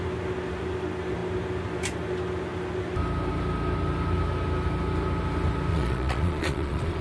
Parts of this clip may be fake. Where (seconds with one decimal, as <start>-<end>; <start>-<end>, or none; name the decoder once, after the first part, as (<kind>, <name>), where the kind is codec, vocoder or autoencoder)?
5.7-7.0 (vocoder, Vocos)